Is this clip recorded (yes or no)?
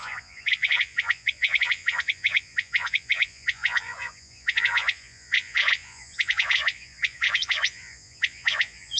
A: no